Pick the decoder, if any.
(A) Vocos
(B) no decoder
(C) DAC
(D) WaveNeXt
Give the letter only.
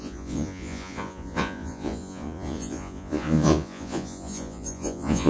A